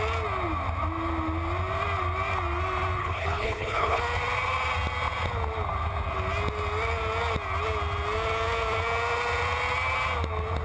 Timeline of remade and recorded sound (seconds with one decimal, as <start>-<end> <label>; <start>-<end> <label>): 0.0-3.0 recorded; 3.0-4.0 remade; 4.0-10.6 recorded